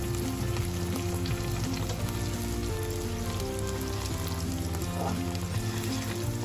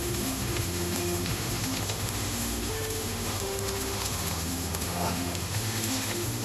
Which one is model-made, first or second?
second